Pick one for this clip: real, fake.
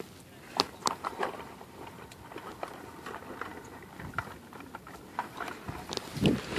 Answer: fake